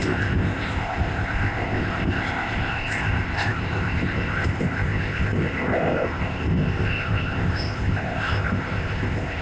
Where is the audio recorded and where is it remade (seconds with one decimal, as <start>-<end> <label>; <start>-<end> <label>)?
0.0-9.4 remade

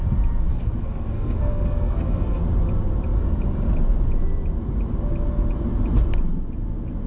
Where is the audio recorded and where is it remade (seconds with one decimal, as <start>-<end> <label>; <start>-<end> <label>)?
0.0-0.5 recorded; 0.5-2.4 remade; 2.4-7.1 recorded

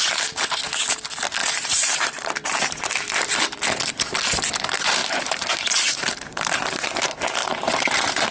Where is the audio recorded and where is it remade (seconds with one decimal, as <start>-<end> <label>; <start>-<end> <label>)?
0.0-1.4 recorded; 1.4-2.8 remade; 2.8-5.0 recorded; 5.0-7.0 remade; 7.0-7.4 recorded; 7.4-8.3 remade

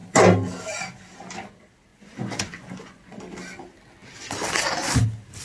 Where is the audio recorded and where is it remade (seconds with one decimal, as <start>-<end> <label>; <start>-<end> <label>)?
0.0-1.9 recorded; 1.9-3.2 remade; 3.2-5.4 recorded

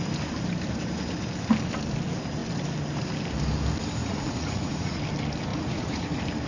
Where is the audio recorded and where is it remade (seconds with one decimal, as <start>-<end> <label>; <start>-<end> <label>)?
0.0-4.0 recorded; 4.0-5.0 remade; 5.0-5.5 recorded; 5.5-6.1 remade; 6.1-6.5 recorded

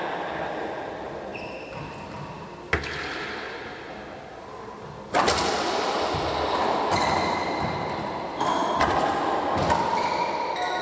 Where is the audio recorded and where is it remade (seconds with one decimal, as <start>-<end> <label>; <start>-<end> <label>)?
0.0-10.8 recorded

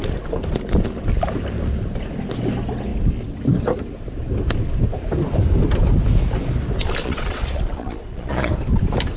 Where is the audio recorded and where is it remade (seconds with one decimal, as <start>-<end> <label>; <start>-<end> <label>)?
0.0-7.0 recorded; 7.0-8.5 remade; 8.5-9.2 recorded